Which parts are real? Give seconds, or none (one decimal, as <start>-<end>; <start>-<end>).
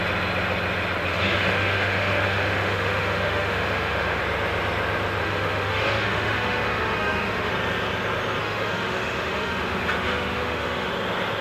0.0-1.1; 4.2-5.2; 7.5-8.4; 10.9-11.4